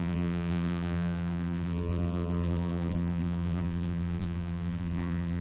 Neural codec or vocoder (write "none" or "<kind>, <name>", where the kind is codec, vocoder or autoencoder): vocoder, BigVGAN v2